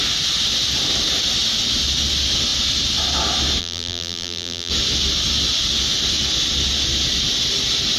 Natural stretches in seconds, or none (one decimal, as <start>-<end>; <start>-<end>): 0.0-3.6; 4.7-8.0